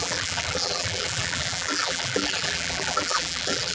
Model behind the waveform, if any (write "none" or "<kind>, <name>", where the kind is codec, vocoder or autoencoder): vocoder, BigVGAN v2